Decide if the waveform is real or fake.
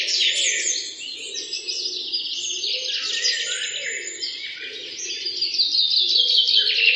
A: real